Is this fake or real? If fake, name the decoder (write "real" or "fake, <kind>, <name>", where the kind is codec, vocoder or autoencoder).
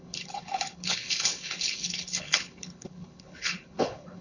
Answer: fake, codec, HILCodec